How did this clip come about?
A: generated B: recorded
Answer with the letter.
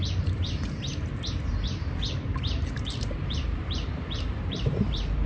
A